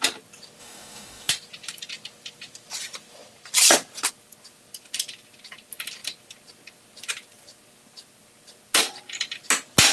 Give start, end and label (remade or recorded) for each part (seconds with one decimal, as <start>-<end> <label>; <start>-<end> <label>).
0.0-0.6 recorded; 0.6-1.3 remade; 1.3-9.9 recorded